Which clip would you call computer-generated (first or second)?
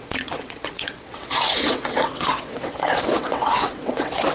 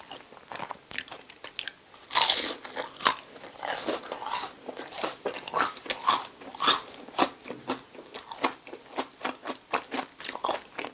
first